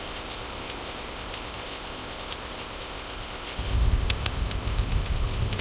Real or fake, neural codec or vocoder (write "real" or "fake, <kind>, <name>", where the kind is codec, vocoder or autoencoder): fake, codec, ZipCodec